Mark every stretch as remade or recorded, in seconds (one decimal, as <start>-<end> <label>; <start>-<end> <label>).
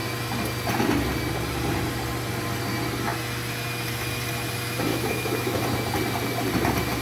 0.0-4.9 recorded; 4.9-5.6 remade; 5.6-7.0 recorded